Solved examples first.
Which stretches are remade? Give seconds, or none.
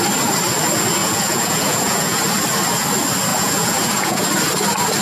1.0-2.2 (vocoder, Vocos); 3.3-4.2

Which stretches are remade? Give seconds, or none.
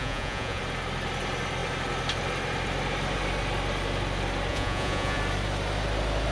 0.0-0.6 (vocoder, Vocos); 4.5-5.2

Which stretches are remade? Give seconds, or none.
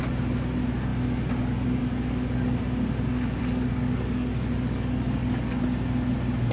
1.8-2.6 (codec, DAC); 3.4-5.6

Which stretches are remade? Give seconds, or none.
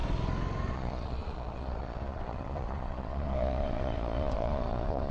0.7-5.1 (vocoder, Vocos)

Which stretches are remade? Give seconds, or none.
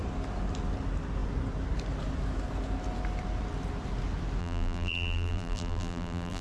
4.4-6.4 (vocoder, BigVGAN v2)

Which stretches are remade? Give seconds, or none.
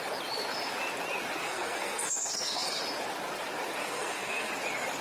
1.4-2.8 (codec, SNAC); 3.8-4.5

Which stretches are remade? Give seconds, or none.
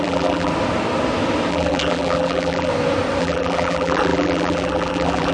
0.0-0.5 (vocoder, BigVGAN v2); 1.5-2.7; 3.2-5.3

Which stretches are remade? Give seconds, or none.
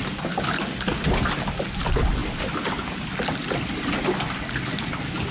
none